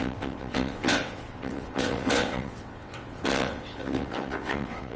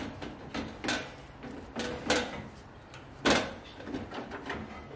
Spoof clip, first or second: first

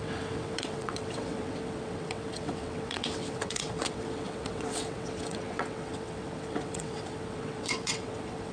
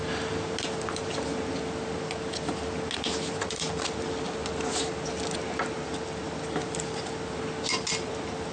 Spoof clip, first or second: first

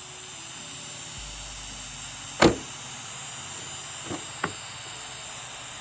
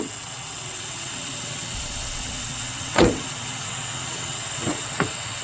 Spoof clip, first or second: second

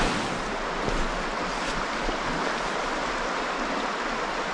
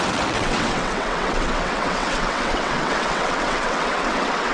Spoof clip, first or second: second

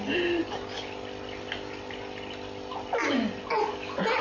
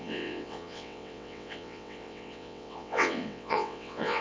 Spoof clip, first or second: second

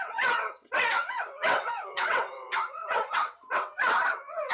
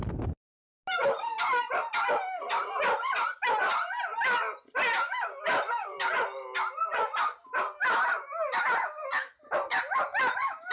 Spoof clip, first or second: first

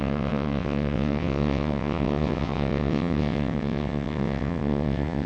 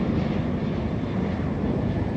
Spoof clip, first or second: first